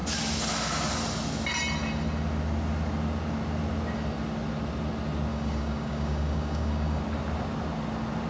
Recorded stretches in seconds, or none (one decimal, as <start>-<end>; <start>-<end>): 0.0-5.3; 7.0-8.3